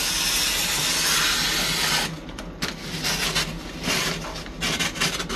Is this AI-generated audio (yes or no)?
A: no